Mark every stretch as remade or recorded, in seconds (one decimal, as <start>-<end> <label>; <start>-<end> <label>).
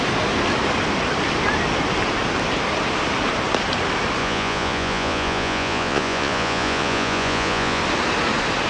0.0-4.2 recorded; 4.2-7.8 remade; 7.8-8.7 recorded